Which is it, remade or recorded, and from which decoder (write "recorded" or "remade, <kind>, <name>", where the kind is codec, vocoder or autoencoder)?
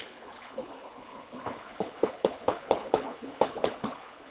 remade, codec, HILCodec